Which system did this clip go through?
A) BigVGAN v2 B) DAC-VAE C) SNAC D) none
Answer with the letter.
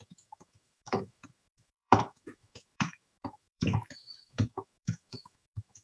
B